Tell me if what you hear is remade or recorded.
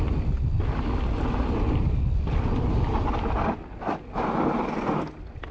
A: recorded